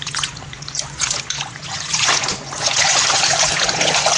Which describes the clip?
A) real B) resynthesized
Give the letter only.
B